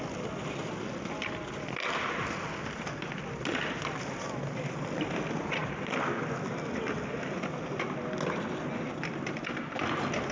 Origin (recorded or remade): recorded